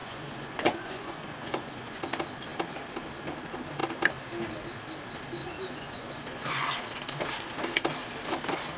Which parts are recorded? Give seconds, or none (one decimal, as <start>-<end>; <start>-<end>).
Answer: 2.0-5.4; 6.7-8.8